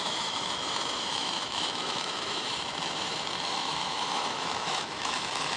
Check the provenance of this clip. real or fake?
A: fake